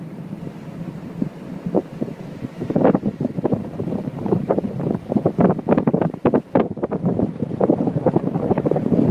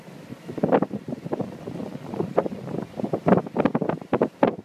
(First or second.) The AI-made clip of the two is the first